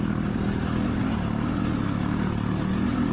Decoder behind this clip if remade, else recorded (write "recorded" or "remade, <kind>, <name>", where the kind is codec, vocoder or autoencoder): recorded